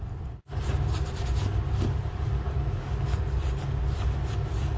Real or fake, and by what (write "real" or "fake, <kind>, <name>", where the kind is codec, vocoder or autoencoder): real